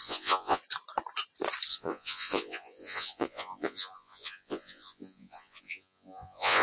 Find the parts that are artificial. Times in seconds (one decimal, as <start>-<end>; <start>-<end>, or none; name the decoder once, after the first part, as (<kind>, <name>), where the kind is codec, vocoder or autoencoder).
0.0-0.6 (vocoder, Vocos); 1.7-6.6